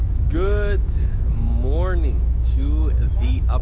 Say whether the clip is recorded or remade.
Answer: remade